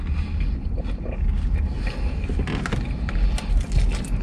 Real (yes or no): yes